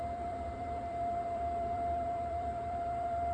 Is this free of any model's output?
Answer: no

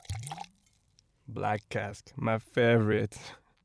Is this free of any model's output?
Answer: no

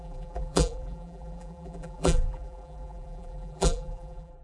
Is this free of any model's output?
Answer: no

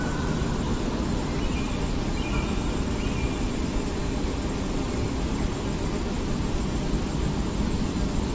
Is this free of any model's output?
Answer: no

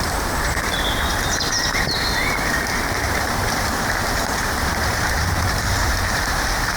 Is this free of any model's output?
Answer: no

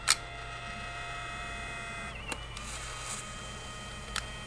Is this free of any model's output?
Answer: no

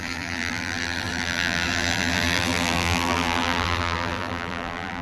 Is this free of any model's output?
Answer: no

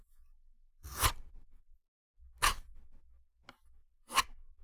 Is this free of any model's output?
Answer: yes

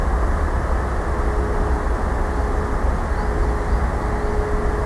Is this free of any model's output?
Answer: yes